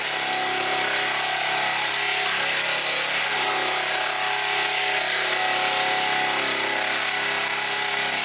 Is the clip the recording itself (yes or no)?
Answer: yes